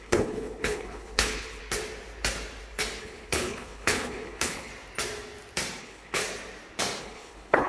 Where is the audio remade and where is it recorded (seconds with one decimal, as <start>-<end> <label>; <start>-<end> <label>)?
0.0-1.6 remade; 1.6-3.0 recorded; 3.0-4.7 remade; 4.7-5.8 recorded; 5.8-6.2 remade; 6.2-7.0 recorded; 7.0-7.7 remade